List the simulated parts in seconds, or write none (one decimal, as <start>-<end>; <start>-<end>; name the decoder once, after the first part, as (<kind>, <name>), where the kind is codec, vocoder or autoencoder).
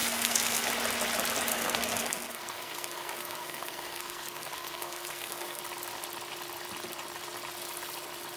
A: 0.0-0.7 (codec, SNAC); 1.5-5.6